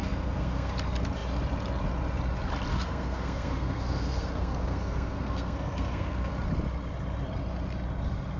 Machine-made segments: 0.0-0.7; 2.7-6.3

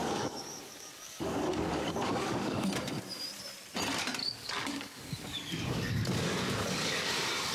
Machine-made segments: 0.0-2.7; 4.2-7.1

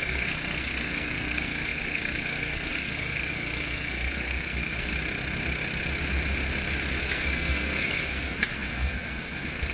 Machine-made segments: 0.0-4.9; 7.0-9.7

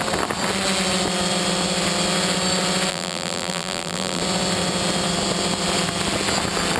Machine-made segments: 2.9-4.2

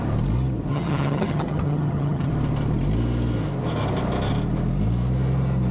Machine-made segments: 0.7-2.3